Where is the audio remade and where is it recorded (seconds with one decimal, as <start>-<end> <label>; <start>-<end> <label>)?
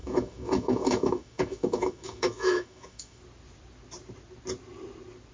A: 0.0-3.2 remade; 3.2-5.3 recorded